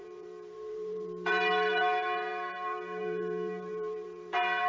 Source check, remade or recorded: remade